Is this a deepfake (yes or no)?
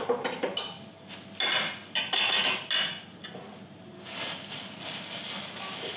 no